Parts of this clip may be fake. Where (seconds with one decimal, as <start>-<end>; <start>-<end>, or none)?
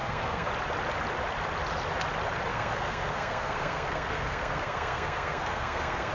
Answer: 0.0-0.5; 2.5-6.1